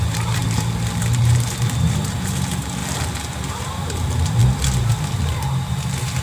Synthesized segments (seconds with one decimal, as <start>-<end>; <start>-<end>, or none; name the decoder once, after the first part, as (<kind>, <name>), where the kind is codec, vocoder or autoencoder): 0.0-0.4 (vocoder, BigVGAN v2); 1.0-2.8; 3.5-4.4; 5.7-6.2